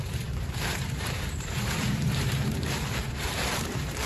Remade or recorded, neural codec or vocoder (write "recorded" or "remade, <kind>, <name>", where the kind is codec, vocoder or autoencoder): remade, vocoder, BigVGAN v2